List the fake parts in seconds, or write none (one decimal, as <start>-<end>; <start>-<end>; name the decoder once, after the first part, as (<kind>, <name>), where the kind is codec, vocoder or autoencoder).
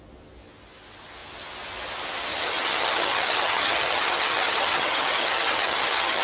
2.3-6.2 (vocoder, HiFi-GAN)